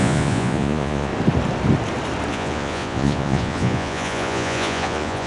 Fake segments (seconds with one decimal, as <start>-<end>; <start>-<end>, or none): 0.0-1.1; 2.3-5.3